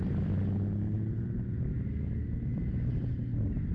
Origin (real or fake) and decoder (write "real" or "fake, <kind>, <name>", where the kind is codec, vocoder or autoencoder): real